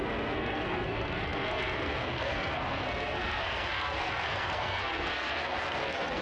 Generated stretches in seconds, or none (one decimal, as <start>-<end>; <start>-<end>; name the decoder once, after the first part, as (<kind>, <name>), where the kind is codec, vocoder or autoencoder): 0.0-6.2 (codec, SNAC)